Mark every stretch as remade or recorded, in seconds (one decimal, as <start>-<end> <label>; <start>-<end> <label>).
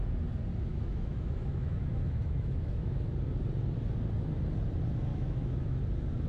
0.0-0.7 recorded; 0.7-3.1 remade; 3.1-5.1 recorded; 5.1-5.8 remade; 5.8-6.3 recorded